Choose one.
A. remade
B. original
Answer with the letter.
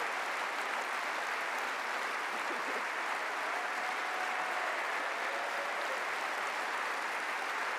B